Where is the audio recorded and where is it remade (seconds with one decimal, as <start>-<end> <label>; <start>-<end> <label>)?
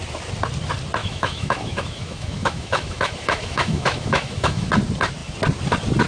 0.0-1.0 recorded; 1.0-4.7 remade; 4.7-6.1 recorded